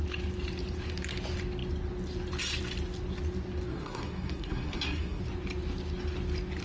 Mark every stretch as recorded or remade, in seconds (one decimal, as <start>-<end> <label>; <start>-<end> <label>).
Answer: 0.0-3.7 recorded; 3.7-5.2 remade; 5.2-6.6 recorded